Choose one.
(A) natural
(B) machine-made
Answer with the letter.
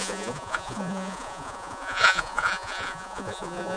B